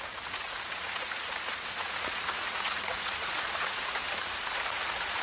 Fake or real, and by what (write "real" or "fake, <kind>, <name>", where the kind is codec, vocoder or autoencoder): fake, vocoder, Vocos